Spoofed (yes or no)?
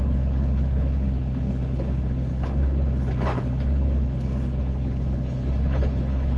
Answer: yes